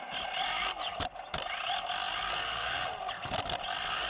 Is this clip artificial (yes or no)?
no